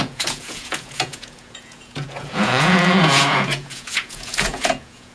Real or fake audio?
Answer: fake